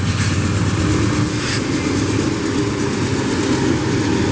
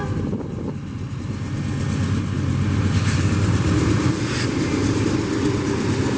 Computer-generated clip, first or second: second